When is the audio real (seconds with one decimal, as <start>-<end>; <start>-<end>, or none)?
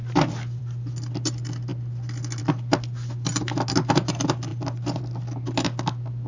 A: 0.0-4.5; 5.0-6.3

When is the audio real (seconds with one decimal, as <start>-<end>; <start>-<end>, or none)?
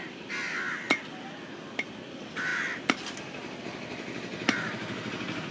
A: 0.0-4.3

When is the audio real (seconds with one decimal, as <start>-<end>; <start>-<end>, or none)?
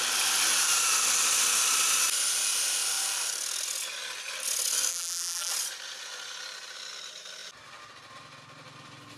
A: 0.0-4.9; 5.5-9.2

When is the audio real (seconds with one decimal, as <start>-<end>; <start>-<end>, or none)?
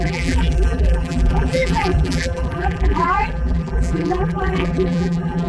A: none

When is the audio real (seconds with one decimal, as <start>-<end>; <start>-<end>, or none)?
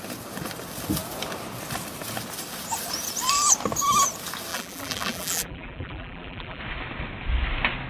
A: 0.0-4.5; 6.6-7.9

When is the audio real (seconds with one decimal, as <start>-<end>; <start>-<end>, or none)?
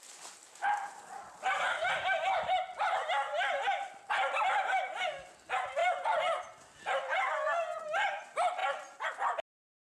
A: 0.0-9.8